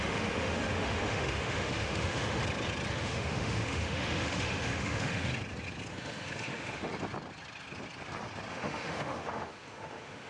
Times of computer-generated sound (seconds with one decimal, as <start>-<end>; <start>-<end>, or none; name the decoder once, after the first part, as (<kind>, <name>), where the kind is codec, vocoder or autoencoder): 0.0-2.4 (autoencoder, DAC-VAE); 2.9-5.3; 5.9-6.9; 8.5-10.3